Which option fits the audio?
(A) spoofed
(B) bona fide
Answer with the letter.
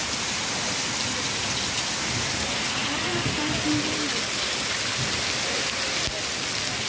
B